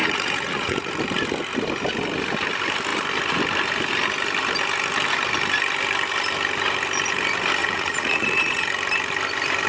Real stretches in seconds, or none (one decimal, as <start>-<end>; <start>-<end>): 0.9-7.6; 8.7-9.7

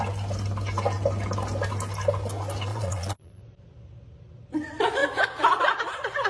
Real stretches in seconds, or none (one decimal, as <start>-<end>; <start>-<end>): 0.0-2.7; 3.4-6.3

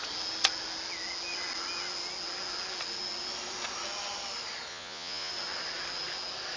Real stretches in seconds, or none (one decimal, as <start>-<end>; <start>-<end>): 0.0-4.7; 5.3-6.6

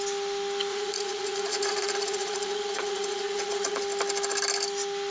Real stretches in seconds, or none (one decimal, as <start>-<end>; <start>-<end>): 0.0-0.7; 3.8-5.1

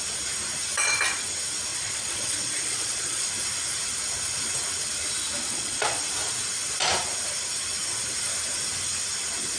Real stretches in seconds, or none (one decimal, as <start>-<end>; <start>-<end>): 0.0-1.7; 3.3-5.5; 6.0-9.6

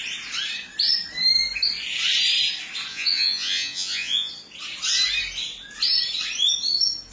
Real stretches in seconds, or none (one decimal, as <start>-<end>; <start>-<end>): 0.0-2.9; 4.3-7.1